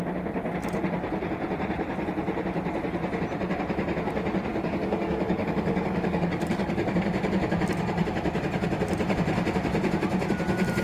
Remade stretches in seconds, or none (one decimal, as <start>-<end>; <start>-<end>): 4.5-6.9